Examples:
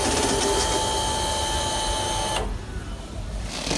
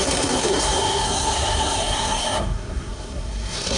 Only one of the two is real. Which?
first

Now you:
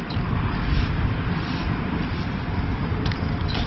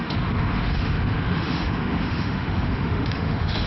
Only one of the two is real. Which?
first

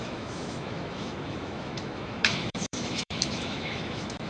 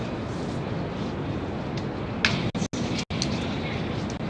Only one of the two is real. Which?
second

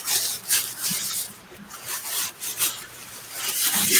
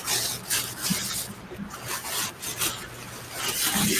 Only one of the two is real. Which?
second